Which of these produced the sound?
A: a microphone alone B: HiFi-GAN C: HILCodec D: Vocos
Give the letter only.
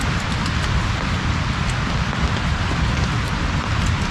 A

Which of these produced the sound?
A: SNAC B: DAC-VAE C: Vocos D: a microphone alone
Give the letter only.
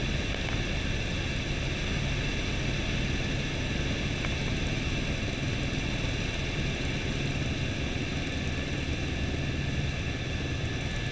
D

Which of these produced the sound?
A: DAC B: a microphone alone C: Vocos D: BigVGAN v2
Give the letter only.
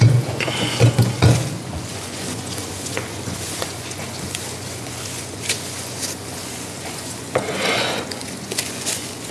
C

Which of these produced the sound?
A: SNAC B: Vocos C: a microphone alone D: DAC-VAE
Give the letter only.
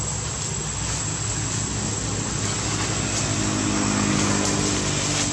C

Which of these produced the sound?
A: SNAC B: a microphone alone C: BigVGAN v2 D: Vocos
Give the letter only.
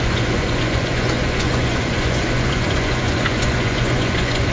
D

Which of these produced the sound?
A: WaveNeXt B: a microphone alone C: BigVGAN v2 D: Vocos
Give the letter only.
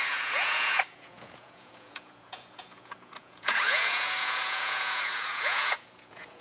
D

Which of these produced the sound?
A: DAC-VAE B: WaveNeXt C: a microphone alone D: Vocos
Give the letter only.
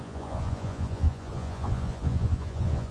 D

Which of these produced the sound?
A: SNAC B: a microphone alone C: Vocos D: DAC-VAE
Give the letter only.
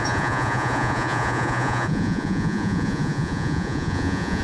C